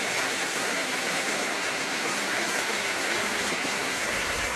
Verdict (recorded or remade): remade